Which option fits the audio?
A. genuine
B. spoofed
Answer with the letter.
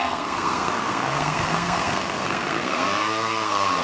B